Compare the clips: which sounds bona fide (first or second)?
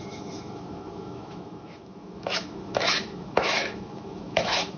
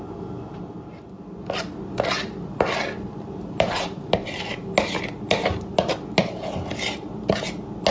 second